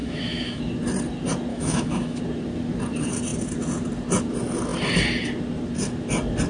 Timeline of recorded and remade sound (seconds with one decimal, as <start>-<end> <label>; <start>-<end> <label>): 0.0-0.6 remade; 0.6-1.5 recorded; 1.5-2.2 remade; 2.2-6.5 recorded